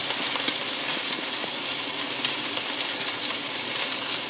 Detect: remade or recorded recorded